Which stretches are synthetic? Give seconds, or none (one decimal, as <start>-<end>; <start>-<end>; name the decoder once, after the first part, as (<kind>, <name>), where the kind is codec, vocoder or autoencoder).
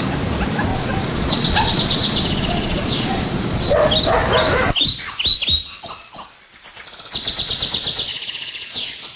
0.7-3.9 (vocoder, Vocos); 8.1-9.2